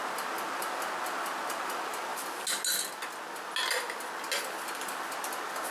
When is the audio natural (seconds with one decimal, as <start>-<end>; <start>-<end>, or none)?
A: 0.0-5.7